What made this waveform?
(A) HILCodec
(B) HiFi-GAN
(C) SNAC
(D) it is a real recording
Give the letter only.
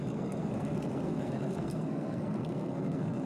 C